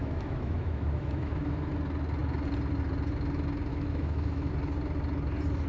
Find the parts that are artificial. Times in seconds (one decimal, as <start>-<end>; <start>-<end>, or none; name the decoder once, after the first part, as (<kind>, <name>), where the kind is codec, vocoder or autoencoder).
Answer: 0.0-1.7 (autoencoder, DAC-VAE); 3.7-4.5